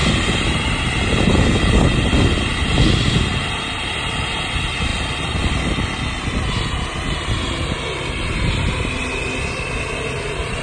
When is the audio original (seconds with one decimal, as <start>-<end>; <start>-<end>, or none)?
0.0-10.6